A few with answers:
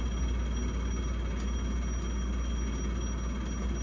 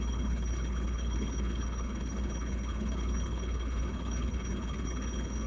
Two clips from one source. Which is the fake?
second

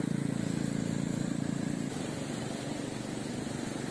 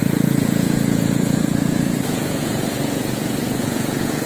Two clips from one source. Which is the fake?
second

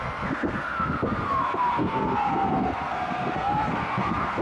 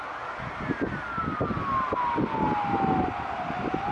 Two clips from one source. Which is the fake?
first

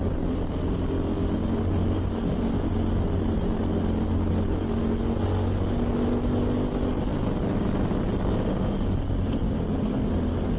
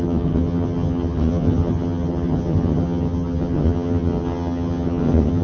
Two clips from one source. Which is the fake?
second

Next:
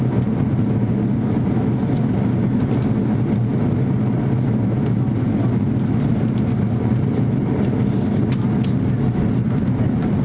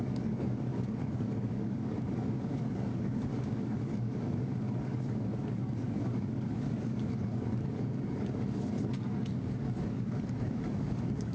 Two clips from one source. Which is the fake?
second